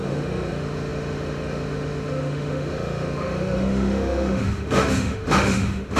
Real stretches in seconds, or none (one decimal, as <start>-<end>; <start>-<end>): none